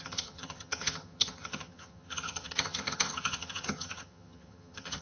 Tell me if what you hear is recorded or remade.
remade